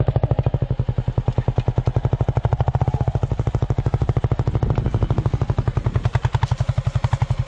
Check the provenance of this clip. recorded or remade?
recorded